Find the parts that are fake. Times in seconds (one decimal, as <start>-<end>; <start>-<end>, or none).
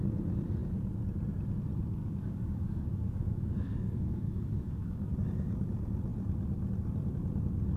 2.0-5.1